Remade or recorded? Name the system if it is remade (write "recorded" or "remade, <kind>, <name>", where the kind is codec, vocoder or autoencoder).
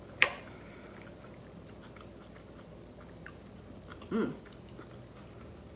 recorded